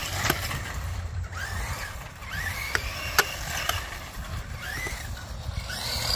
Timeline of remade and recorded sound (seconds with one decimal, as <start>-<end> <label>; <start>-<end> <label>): 0.0-1.8 remade; 1.8-2.2 recorded; 2.2-4.2 remade; 4.2-6.2 recorded